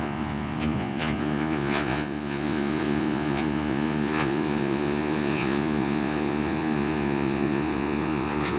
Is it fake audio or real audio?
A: fake